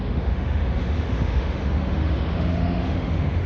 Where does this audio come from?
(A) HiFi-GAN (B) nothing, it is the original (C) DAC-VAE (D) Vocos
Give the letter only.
C